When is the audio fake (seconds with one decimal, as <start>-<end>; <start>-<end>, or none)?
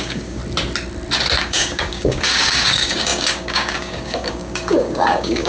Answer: 0.0-0.4; 1.4-5.5